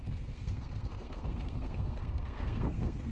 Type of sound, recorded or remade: remade